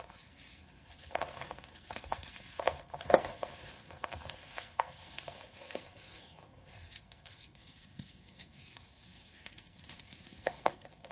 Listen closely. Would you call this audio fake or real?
fake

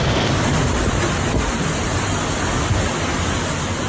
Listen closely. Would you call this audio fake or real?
real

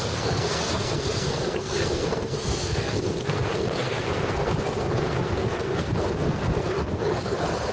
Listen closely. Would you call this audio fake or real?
fake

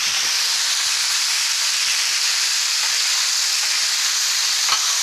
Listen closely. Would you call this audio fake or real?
real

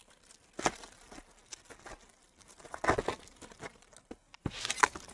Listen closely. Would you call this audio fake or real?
real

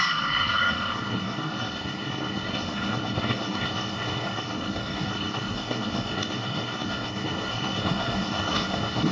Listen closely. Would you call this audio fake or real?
fake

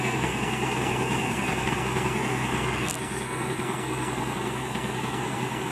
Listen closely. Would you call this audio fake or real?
fake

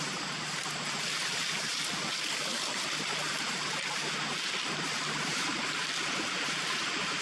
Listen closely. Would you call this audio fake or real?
real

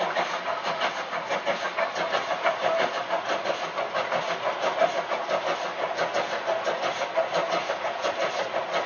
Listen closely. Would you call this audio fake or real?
real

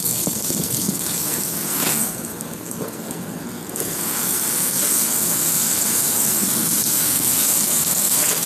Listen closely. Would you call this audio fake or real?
fake